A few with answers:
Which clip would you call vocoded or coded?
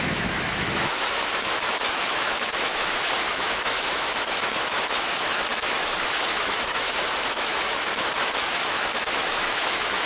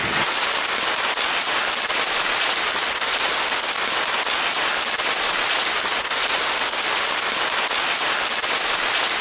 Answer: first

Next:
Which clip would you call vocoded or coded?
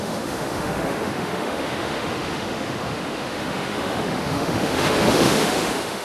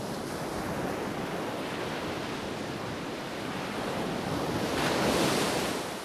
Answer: first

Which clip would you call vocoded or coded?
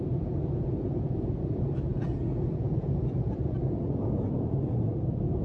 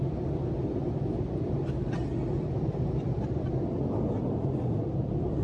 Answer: first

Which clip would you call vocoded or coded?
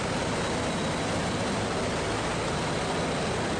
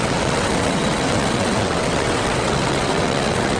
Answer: second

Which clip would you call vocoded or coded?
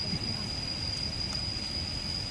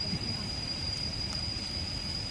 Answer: second